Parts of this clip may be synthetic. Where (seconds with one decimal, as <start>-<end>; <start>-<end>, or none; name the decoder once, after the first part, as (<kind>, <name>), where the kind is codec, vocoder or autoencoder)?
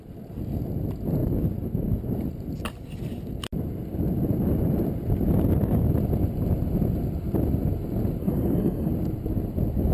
8.2-8.9 (codec, SNAC)